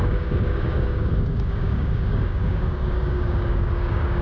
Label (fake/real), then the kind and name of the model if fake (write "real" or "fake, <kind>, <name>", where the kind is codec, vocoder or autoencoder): fake, codec, DAC